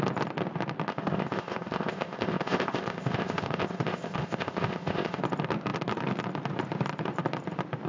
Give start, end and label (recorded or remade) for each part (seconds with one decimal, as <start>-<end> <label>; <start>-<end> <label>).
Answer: 0.0-0.9 recorded; 0.9-5.2 remade; 5.2-7.9 recorded